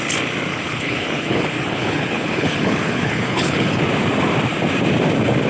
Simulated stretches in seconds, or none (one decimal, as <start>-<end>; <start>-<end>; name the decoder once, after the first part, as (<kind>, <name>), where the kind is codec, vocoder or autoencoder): 0.5-3.8 (codec, HILCodec)